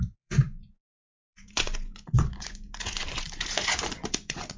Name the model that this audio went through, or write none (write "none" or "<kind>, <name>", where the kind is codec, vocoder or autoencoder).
vocoder, Vocos